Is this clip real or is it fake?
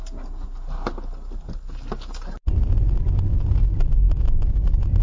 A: real